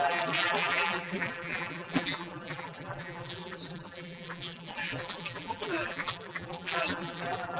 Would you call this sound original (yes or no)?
no